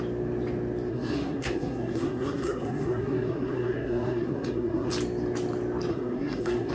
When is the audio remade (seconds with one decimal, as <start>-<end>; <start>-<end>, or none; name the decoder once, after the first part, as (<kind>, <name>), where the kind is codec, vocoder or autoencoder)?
0.9-4.9 (codec, SNAC); 5.9-6.7